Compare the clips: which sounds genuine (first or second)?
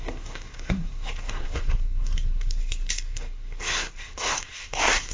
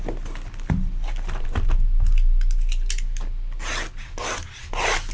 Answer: second